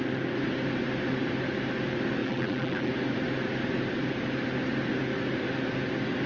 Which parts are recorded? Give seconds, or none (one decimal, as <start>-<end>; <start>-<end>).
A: 0.0-2.2; 2.9-6.3